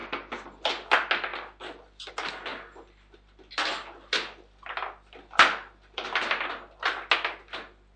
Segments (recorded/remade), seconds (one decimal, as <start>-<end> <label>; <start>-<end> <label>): 0.0-8.0 recorded